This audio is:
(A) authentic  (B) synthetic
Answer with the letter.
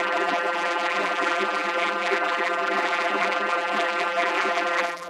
B